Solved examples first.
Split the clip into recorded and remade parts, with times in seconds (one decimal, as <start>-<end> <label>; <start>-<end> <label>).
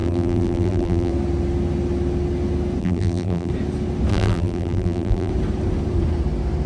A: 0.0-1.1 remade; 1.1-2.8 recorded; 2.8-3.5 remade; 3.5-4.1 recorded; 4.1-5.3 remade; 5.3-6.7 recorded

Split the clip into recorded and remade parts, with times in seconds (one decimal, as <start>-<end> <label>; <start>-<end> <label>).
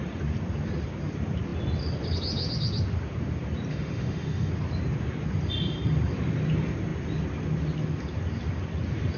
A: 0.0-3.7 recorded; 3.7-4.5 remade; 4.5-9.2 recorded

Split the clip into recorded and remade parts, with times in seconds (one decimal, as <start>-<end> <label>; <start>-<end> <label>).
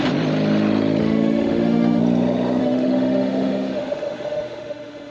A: 0.0-1.0 recorded; 1.0-2.0 remade; 2.0-2.6 recorded; 2.6-5.1 remade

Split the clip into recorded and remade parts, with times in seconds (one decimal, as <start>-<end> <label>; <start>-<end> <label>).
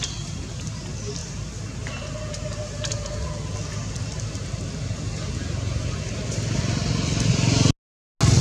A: 0.0-8.4 recorded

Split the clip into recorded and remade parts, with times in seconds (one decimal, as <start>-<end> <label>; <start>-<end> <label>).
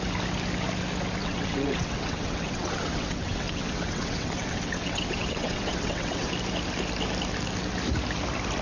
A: 0.0-1.2 recorded; 1.2-6.3 remade; 6.3-8.6 recorded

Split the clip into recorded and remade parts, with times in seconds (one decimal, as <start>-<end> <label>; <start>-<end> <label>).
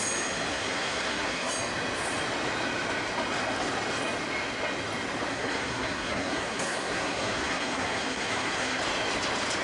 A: 0.0-0.5 recorded; 0.5-1.5 remade; 1.5-5.3 recorded; 5.3-8.8 remade; 8.8-9.6 recorded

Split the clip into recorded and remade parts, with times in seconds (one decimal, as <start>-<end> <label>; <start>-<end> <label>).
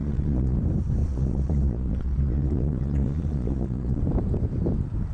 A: 0.0-0.6 remade; 0.6-1.0 recorded; 1.0-4.0 remade; 4.0-5.1 recorded